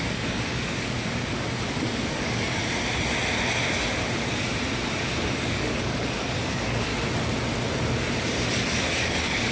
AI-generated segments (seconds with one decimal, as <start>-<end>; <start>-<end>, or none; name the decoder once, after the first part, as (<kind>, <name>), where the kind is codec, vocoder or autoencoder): 0.0-2.6 (codec, DAC); 5.2-6.9; 8.8-9.5